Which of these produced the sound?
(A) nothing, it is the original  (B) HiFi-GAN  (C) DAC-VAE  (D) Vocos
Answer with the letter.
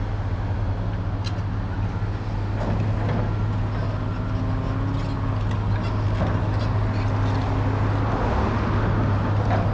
A